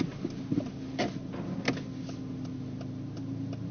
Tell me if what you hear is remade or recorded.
recorded